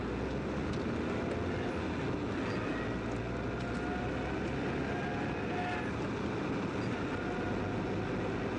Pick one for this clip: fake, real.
real